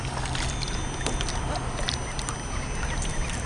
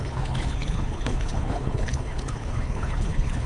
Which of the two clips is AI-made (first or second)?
second